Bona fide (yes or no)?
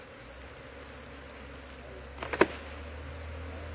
yes